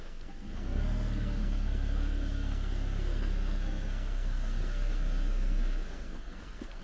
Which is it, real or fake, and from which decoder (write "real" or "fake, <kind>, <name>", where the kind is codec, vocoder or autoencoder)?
fake, codec, SNAC